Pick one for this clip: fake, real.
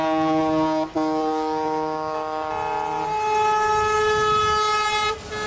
real